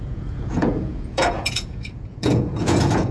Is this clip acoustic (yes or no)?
no